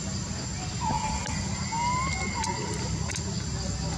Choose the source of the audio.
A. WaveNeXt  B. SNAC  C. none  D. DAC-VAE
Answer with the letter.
C